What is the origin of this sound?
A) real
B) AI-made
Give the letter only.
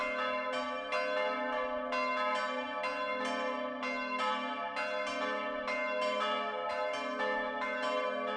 A